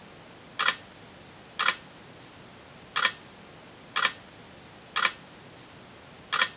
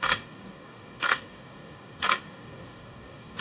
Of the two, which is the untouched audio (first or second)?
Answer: first